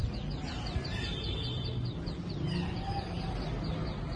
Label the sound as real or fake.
real